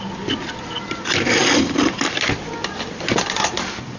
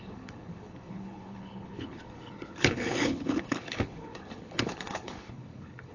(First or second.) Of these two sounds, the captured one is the first